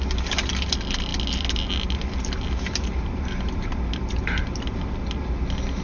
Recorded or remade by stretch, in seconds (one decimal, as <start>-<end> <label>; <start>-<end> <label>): 0.0-5.8 recorded